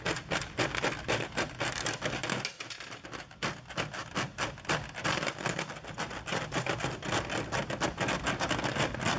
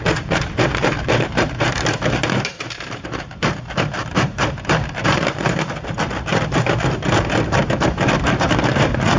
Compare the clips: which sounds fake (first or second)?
second